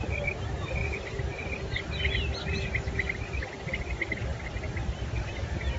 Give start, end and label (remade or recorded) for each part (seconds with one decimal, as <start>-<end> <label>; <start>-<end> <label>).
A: 0.0-5.8 recorded